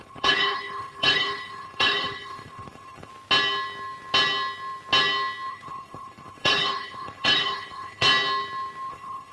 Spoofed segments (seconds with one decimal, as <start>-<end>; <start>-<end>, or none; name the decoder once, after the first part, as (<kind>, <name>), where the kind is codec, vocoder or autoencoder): 0.0-3.1 (codec, HILCodec); 5.5-8.1; 8.9-9.3